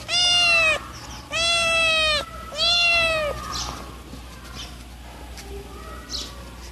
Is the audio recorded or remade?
recorded